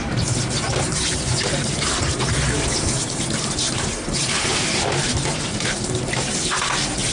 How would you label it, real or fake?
real